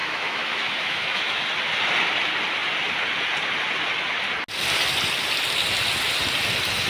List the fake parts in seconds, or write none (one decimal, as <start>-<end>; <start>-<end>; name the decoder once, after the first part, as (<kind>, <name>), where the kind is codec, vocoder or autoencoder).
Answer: 0.0-1.4 (autoencoder, DAC-VAE)